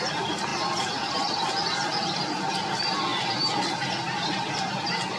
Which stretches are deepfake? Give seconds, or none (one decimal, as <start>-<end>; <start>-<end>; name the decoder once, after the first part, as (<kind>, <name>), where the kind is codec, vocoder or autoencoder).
none